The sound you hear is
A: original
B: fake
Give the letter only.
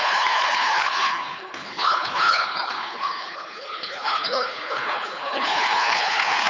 B